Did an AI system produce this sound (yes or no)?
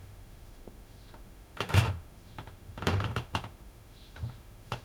yes